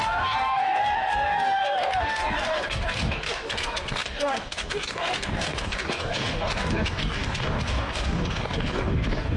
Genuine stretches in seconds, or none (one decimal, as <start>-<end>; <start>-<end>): none

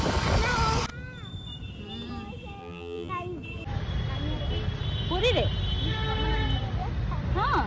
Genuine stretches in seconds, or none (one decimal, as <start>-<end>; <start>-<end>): 0.0-2.6; 3.1-7.7

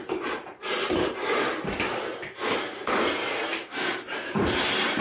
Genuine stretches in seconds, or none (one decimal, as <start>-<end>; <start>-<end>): none

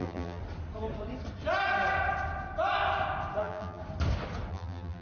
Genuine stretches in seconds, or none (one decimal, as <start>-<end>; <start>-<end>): 0.4-3.4; 3.8-4.5

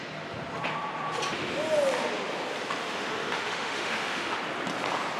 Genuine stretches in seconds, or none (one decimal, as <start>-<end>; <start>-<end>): 0.0-2.8; 4.4-5.2

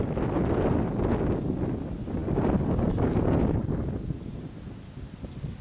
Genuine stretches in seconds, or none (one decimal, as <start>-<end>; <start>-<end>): 0.0-5.6

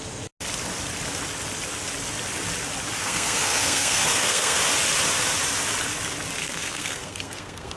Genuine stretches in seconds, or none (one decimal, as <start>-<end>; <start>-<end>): 0.0-3.0; 4.6-6.4